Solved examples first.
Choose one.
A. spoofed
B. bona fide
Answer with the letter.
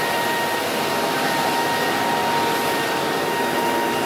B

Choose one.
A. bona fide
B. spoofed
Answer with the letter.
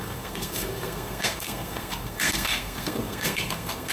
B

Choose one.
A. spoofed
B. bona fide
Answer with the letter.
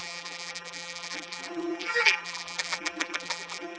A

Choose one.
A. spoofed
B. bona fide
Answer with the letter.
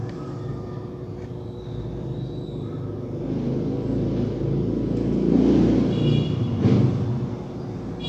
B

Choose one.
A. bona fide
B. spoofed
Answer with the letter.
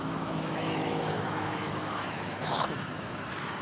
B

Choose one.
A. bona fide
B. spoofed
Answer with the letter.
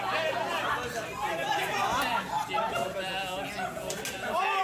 A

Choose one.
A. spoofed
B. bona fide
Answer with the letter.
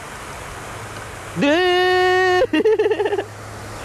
B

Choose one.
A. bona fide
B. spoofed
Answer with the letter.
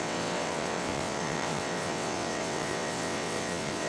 B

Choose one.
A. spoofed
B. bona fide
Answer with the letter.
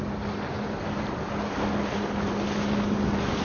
B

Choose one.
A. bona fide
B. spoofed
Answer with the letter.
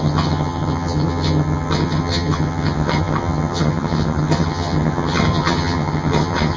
B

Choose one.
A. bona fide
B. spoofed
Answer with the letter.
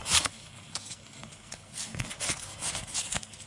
B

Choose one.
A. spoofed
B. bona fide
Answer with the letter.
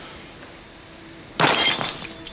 B